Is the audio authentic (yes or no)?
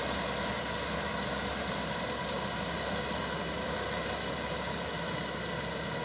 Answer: yes